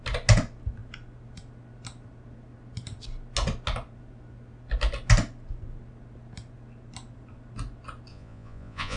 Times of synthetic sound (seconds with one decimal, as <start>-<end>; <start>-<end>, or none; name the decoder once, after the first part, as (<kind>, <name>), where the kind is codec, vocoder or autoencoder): 8.1-9.0 (vocoder, Vocos)